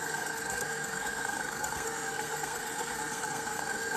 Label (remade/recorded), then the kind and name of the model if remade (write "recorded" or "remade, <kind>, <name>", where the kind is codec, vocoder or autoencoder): remade, codec, SNAC